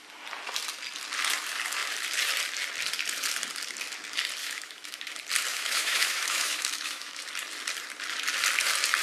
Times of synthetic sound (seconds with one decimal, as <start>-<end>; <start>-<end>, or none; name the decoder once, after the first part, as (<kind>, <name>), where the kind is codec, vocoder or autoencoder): 4.4-5.0 (autoencoder, DAC-VAE); 5.5-7.2